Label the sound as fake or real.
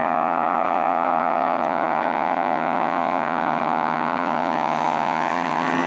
fake